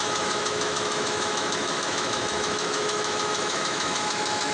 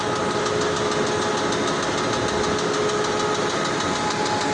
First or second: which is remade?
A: first